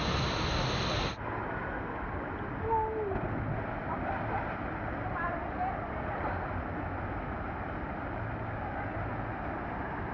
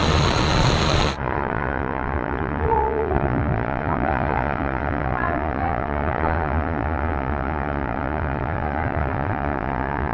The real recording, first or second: first